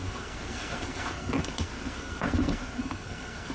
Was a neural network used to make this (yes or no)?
yes